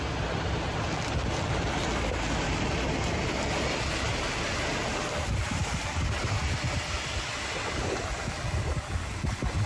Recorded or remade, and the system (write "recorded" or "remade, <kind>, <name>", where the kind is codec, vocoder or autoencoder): recorded